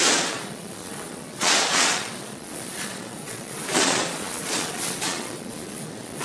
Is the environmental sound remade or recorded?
remade